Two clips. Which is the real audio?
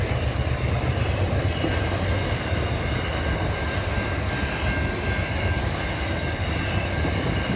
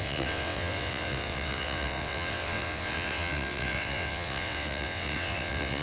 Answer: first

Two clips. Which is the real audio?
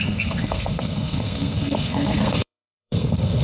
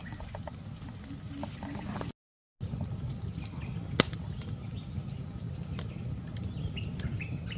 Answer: second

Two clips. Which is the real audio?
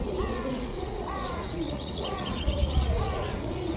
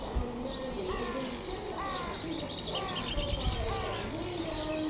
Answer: second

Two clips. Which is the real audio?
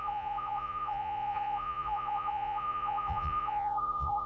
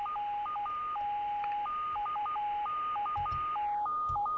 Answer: second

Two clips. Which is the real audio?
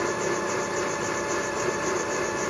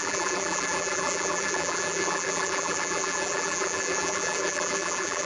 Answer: first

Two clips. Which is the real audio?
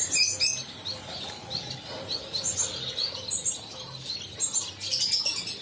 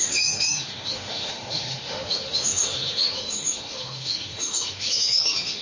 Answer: first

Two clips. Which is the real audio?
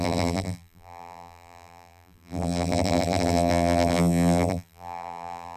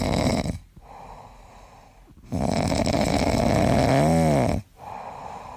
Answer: second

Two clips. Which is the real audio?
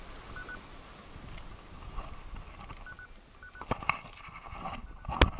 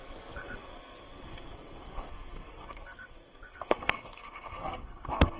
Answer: first